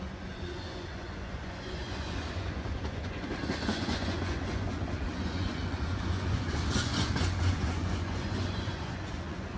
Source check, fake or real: fake